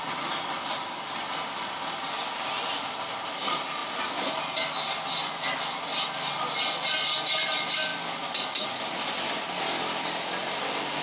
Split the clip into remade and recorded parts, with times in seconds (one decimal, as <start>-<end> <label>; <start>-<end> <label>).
0.0-11.0 recorded